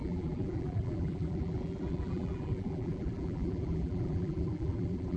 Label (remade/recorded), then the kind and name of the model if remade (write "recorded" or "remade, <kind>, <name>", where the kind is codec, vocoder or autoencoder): remade, vocoder, BigVGAN v2